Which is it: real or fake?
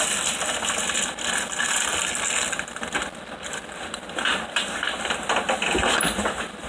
real